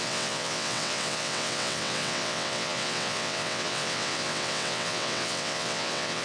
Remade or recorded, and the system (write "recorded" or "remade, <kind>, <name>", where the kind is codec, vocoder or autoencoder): remade, vocoder, WaveNeXt